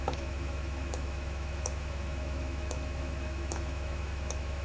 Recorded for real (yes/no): no